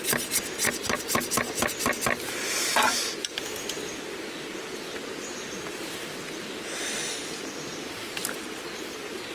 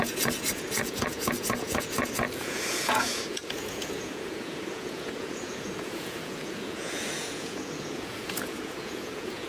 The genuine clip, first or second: first